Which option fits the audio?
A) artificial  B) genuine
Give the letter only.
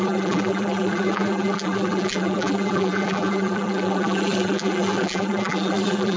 A